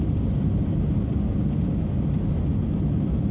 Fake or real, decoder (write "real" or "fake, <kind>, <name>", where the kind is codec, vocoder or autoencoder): real